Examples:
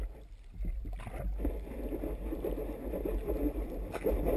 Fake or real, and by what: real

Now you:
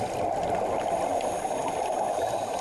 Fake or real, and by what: real